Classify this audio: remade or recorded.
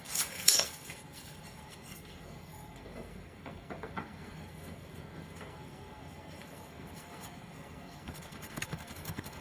remade